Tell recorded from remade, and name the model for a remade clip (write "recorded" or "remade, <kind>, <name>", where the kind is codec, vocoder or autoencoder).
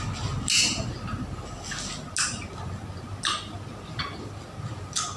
recorded